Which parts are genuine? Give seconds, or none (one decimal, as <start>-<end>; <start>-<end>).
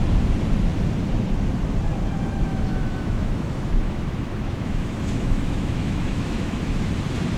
0.0-2.5; 6.9-7.4